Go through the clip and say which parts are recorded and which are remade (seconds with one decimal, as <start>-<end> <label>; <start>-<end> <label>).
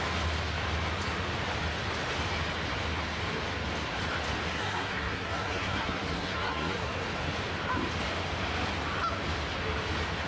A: 0.0-4.5 recorded; 4.5-6.9 remade; 6.9-10.3 recorded